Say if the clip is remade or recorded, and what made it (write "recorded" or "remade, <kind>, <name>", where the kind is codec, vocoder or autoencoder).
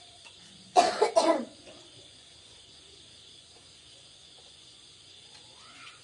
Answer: remade, vocoder, Vocos